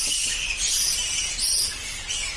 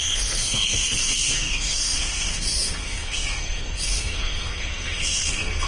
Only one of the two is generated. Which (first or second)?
second